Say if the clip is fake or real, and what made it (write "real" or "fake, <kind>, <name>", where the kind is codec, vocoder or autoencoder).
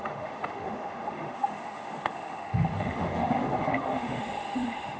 fake, autoencoder, DAC-VAE